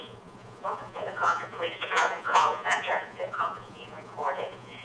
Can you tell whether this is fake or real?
fake